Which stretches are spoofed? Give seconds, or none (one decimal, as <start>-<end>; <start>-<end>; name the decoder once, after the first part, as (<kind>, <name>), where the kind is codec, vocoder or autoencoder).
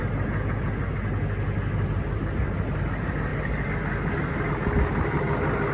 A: none